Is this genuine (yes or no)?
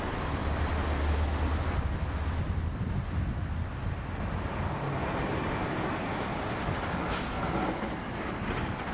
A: yes